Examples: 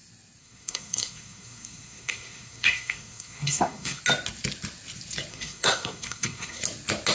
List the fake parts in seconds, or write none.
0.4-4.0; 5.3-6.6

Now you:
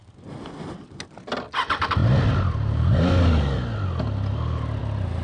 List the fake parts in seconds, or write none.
none

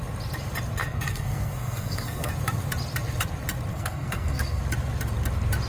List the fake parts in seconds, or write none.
0.8-2.3; 3.7-4.6

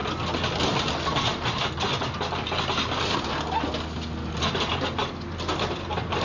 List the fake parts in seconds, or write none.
none

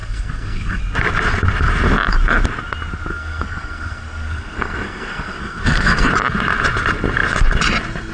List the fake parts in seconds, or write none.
0.0-0.8; 3.1-6.1

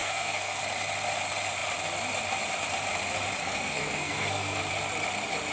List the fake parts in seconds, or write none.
0.0-0.6; 3.4-4.6

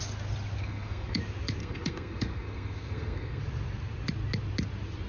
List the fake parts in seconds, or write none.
0.6-1.2; 1.6-3.4